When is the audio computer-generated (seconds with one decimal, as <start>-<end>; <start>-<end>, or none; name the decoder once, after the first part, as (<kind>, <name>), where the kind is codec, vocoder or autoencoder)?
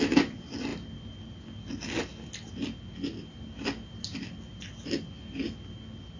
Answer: none